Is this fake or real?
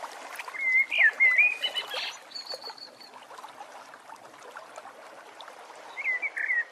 real